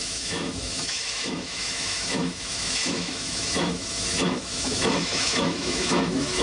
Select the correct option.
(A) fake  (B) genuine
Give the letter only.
A